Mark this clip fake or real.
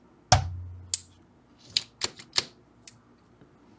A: real